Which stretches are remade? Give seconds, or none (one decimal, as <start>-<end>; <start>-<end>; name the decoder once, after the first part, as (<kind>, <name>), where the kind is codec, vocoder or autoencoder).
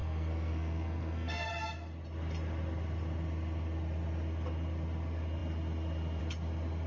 0.0-1.5 (codec, SNAC)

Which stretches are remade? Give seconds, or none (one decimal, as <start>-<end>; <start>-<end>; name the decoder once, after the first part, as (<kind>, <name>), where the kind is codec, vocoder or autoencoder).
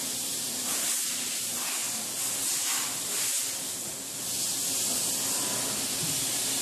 0.0-1.8 (vocoder, BigVGAN v2); 5.8-6.6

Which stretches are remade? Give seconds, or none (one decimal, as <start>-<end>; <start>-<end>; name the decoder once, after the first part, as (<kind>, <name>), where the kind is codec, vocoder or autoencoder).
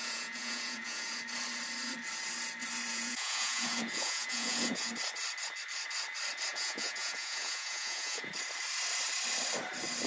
0.0-1.2 (vocoder, Vocos); 2.9-4.9; 6.5-8.3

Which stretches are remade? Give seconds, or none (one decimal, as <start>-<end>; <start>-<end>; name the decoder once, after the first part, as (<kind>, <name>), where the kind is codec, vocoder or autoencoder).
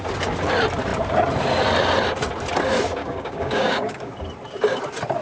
3.0-4.1 (codec, DAC)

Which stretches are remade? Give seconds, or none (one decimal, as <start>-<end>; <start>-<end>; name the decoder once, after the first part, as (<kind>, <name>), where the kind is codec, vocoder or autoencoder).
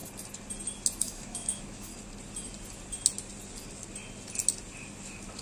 1.0-1.9 (autoencoder, DAC-VAE)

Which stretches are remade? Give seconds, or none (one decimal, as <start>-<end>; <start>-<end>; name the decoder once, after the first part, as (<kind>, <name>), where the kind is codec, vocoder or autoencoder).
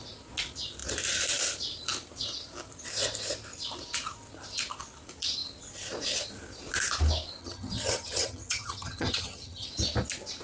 7.4-9.7 (vocoder, HiFi-GAN)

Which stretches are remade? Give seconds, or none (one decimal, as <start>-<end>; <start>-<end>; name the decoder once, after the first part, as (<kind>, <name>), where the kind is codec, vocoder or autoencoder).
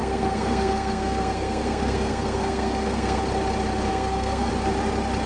0.0-3.2 (codec, SNAC); 3.9-4.5